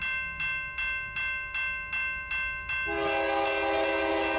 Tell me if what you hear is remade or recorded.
recorded